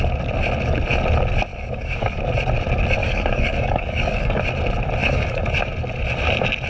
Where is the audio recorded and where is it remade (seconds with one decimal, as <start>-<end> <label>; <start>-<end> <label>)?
0.0-1.5 recorded; 1.5-2.2 remade; 2.2-3.0 recorded; 3.0-4.4 remade; 4.4-5.0 recorded; 5.0-5.7 remade; 5.7-6.7 recorded